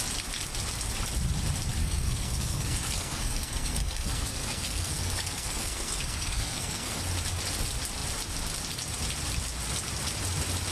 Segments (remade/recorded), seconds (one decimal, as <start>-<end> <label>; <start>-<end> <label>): 0.0-1.8 recorded; 1.8-7.0 remade; 7.0-10.7 recorded